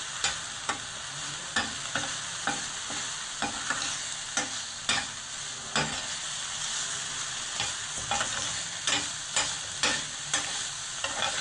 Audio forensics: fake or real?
real